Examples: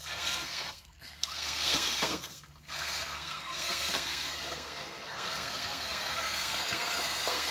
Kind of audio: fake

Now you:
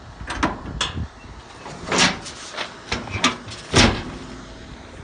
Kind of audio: real